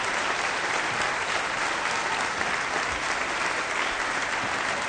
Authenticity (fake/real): real